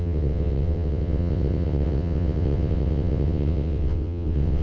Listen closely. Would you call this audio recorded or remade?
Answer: remade